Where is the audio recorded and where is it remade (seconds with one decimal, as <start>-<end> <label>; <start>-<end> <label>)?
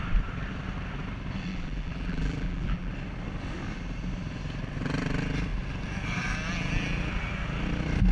0.0-1.5 recorded; 1.5-2.9 remade; 2.9-8.1 recorded